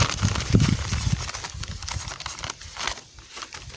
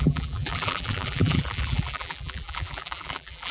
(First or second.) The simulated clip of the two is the second